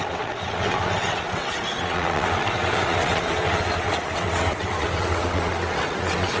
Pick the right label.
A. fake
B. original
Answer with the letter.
A